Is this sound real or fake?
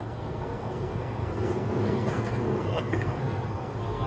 fake